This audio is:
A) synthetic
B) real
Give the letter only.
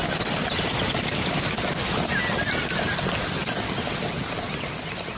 B